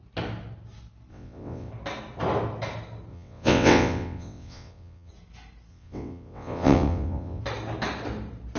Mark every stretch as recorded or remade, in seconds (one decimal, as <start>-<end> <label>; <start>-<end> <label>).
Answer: 0.0-1.1 recorded; 1.1-1.7 remade; 1.7-3.1 recorded; 3.1-5.1 remade; 5.1-5.7 recorded; 5.7-7.4 remade; 7.4-8.6 recorded